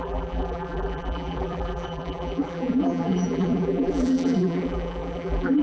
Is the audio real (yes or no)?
no